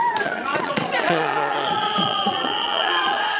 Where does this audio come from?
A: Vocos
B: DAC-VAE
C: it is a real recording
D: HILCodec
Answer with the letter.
A